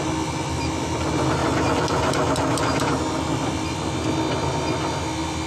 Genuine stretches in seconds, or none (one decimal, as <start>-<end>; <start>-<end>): 0.0-5.5